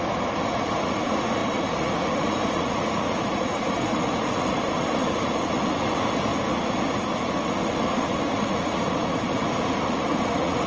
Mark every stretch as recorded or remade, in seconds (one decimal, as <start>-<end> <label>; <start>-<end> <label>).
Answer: 0.0-10.7 remade